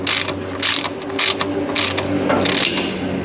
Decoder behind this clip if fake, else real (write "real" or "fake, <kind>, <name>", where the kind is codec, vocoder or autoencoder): real